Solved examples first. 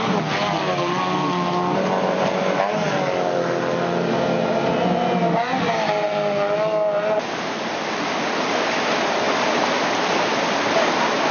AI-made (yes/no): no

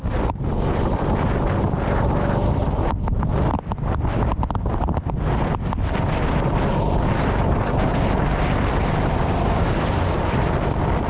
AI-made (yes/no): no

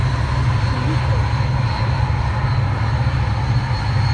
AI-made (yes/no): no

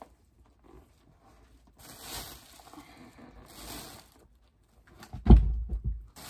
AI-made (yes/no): no